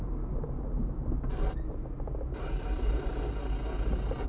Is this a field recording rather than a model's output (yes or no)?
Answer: yes